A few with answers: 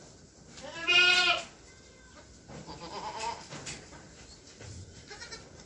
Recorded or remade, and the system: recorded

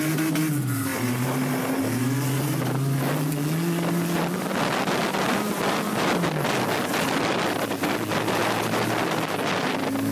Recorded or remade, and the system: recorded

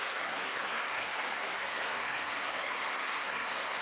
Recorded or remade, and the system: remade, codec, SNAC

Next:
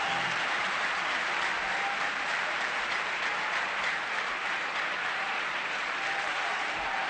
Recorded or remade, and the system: remade, vocoder, BigVGAN v2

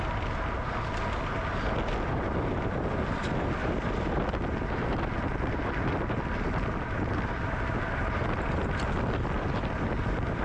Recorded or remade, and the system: recorded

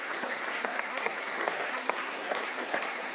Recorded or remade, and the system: remade, codec, SNAC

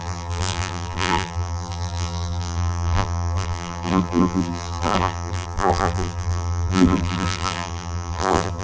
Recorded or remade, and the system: remade, vocoder, BigVGAN v2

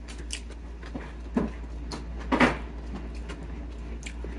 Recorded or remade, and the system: recorded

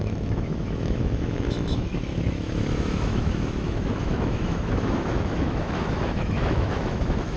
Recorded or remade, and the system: remade, autoencoder, DAC-VAE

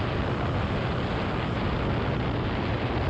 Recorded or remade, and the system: recorded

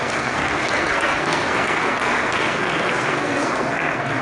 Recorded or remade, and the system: remade, codec, SNAC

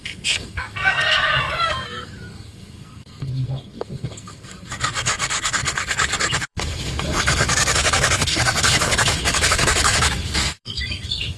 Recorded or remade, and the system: remade, codec, SNAC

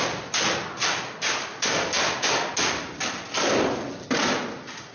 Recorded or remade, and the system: recorded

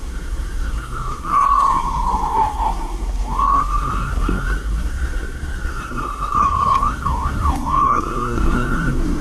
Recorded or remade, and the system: remade, codec, SNAC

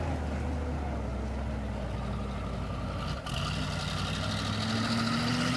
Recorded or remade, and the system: recorded